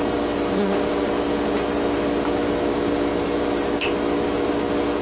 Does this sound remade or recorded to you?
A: recorded